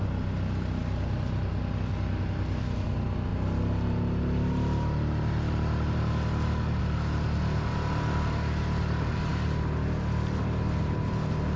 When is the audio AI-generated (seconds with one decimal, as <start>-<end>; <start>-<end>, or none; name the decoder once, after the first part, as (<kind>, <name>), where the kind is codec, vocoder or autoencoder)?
none